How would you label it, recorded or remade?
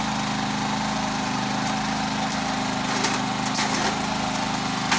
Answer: recorded